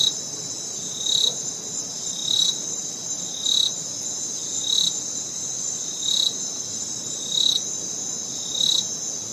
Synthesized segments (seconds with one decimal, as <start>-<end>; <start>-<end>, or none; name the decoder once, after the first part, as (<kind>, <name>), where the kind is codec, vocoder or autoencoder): 2.2-2.9 (vocoder, BigVGAN v2)